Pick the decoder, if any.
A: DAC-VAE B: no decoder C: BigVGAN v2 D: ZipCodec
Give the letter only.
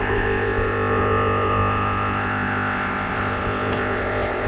D